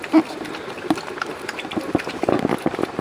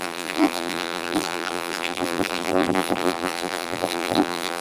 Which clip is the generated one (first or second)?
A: second